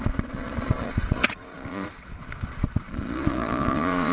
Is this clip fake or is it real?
fake